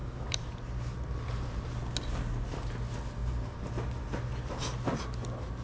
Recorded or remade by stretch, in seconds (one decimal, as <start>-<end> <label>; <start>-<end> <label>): 0.0-0.5 remade; 0.5-3.2 recorded; 3.2-3.7 remade; 3.7-5.6 recorded